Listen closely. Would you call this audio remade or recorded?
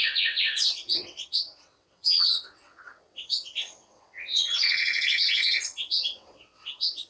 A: remade